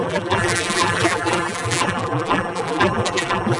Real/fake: fake